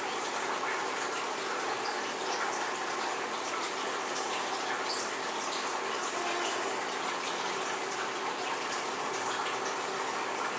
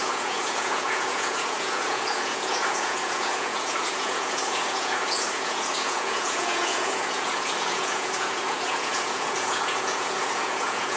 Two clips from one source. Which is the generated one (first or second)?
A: second